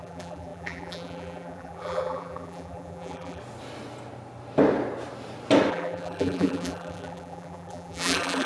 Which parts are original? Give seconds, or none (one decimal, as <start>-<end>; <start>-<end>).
3.4-5.7